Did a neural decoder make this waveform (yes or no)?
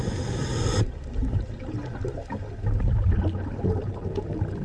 no